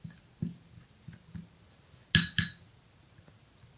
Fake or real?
real